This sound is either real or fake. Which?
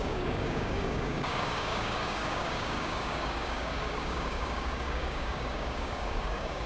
fake